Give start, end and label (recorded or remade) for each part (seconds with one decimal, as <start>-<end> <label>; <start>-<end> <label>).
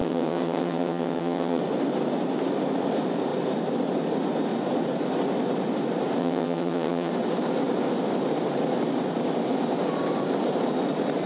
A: 0.0-1.6 remade; 1.6-6.2 recorded; 6.2-7.1 remade; 7.1-11.3 recorded